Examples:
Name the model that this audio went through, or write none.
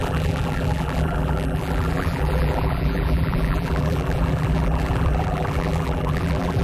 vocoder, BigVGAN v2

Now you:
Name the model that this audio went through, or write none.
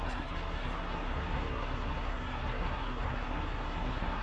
codec, SNAC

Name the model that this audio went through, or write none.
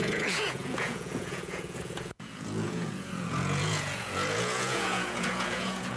vocoder, Vocos